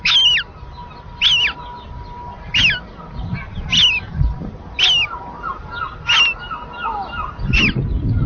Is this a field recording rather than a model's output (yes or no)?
yes